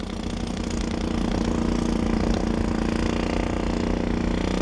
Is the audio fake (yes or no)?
no